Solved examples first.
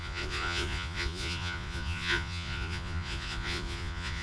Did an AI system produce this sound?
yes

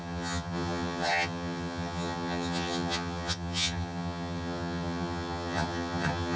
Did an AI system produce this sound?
yes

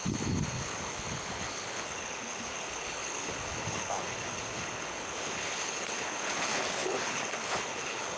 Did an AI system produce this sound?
yes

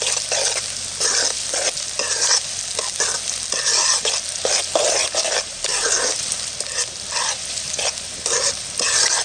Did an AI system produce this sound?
no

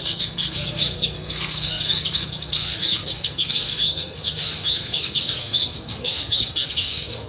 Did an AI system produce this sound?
yes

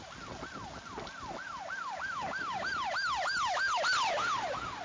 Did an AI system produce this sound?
no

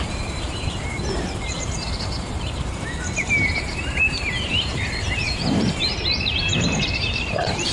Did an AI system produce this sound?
yes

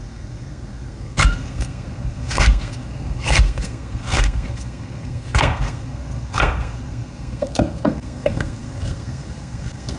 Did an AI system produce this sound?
yes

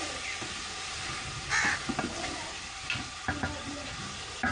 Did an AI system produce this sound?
no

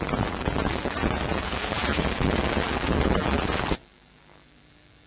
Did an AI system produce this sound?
yes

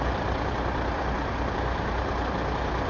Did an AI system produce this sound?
no